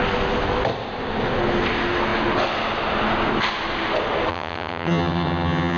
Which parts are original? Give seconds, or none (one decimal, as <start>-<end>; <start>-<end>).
0.0-4.3